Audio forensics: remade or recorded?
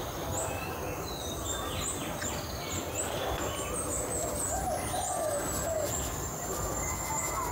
recorded